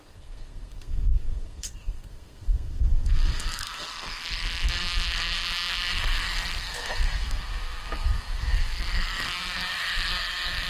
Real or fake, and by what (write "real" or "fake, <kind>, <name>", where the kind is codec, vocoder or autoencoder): fake, codec, SNAC